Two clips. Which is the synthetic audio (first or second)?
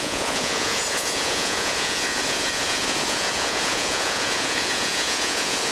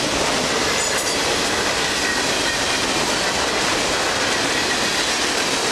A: first